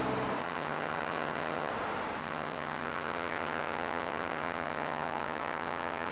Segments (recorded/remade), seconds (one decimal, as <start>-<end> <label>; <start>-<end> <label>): 0.0-0.4 recorded; 0.4-1.7 remade; 1.7-2.2 recorded; 2.2-6.1 remade